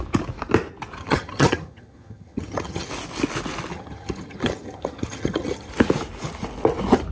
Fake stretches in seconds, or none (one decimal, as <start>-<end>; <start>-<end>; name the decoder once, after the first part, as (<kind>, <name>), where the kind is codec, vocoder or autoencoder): 1.0-2.9 (vocoder, HiFi-GAN); 3.7-5.7